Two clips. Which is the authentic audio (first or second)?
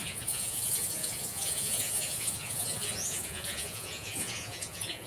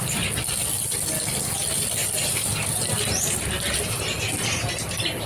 second